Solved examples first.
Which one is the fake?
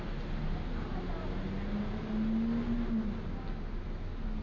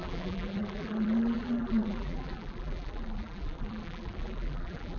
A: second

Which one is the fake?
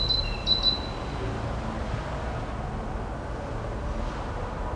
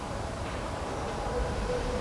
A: second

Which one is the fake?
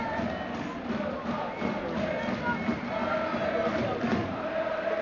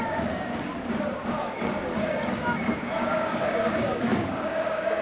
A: second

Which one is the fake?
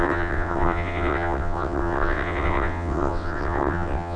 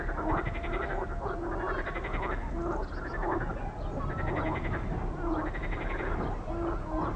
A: first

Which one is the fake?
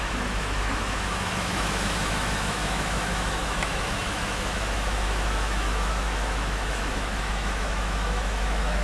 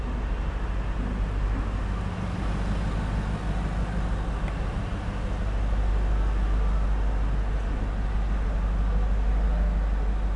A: first